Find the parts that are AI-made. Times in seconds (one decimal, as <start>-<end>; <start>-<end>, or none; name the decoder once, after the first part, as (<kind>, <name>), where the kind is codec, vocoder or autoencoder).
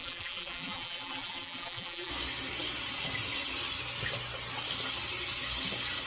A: 0.0-2.1 (vocoder, BigVGAN v2)